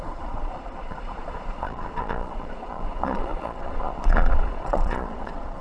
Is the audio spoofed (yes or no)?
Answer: yes